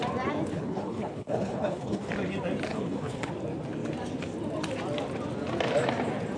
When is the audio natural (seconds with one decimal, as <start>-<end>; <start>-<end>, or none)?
0.0-0.5; 2.1-2.7; 3.3-6.4